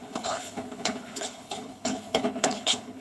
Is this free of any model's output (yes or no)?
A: no